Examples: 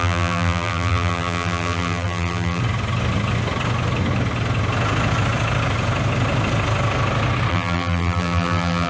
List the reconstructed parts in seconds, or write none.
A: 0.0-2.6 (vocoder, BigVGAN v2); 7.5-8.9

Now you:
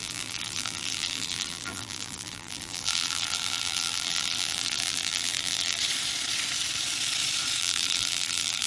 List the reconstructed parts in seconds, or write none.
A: 0.0-5.8 (vocoder, BigVGAN v2); 7.6-8.7

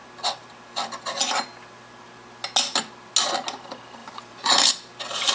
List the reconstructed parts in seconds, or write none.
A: 4.0-4.7 (vocoder, BigVGAN v2)

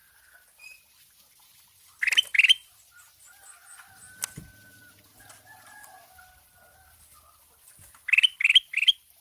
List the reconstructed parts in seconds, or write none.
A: none